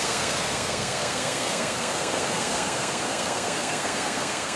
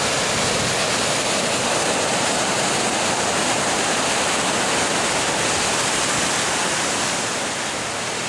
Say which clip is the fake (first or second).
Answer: first